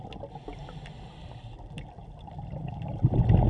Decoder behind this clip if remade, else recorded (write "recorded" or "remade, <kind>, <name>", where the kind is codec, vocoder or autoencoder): recorded